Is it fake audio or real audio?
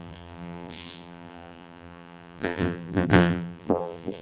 fake